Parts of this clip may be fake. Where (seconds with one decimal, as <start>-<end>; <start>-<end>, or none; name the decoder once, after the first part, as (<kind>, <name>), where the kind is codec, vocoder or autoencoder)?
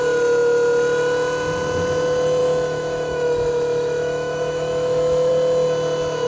2.4-5.3 (autoencoder, DAC-VAE)